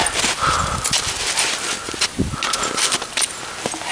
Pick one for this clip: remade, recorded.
recorded